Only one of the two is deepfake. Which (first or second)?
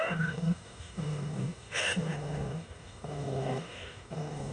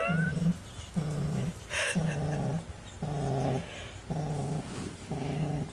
first